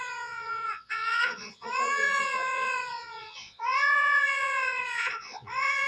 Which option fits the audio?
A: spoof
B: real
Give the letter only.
A